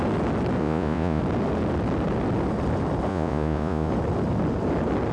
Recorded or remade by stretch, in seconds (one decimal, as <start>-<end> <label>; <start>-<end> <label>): 0.0-0.6 recorded; 0.6-1.2 remade; 1.2-3.1 recorded; 3.1-3.9 remade; 3.9-5.1 recorded